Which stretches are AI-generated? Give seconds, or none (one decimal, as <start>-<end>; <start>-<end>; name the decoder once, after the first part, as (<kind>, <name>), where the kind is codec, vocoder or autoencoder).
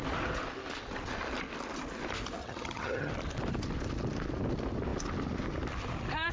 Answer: 2.4-3.1 (vocoder, HiFi-GAN)